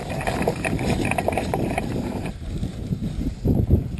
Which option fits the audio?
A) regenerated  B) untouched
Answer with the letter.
A